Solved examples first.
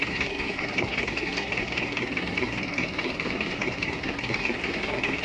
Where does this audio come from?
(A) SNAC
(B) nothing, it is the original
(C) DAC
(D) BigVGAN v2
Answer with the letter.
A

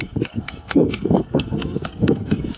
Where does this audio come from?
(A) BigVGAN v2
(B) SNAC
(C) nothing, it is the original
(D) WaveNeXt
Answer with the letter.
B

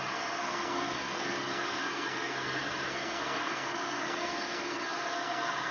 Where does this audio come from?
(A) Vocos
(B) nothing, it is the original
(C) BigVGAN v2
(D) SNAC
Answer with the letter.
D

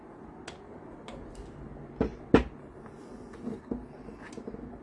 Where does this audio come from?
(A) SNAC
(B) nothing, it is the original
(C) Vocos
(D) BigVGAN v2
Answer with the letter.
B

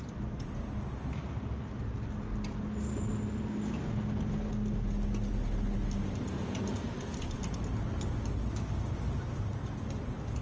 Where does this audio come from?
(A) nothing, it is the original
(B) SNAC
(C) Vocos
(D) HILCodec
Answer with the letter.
A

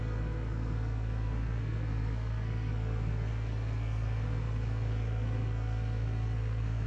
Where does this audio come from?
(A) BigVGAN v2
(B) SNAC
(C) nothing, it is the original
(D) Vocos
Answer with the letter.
B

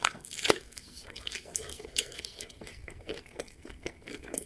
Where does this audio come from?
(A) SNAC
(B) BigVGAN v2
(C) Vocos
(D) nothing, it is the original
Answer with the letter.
A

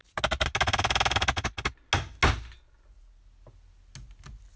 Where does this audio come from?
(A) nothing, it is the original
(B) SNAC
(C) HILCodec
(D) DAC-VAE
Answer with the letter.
A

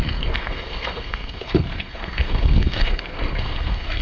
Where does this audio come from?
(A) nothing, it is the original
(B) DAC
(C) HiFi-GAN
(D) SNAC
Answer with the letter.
D